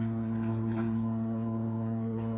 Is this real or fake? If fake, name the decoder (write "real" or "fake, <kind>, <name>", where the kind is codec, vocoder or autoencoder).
fake, codec, SNAC